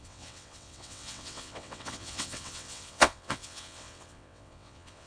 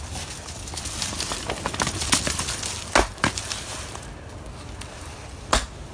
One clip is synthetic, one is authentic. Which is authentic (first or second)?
second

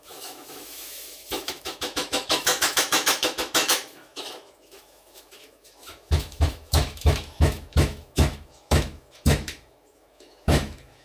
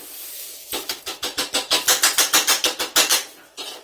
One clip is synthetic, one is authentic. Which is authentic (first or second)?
second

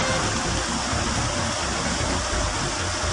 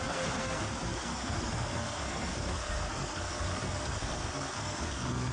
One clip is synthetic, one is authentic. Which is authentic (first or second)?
first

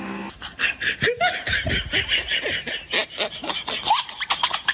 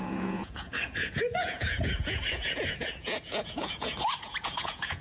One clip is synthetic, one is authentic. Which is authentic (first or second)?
first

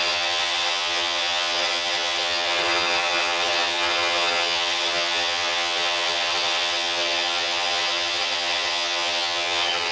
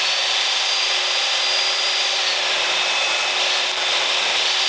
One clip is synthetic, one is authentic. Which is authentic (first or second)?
second